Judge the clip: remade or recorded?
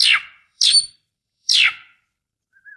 remade